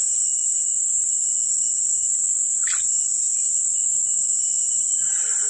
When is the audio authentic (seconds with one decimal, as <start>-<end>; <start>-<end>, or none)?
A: 0.0-5.5